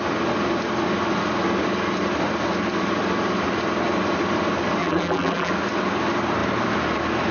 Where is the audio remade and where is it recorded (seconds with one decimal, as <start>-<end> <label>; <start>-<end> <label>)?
0.0-4.8 recorded; 4.8-5.5 remade; 5.5-7.3 recorded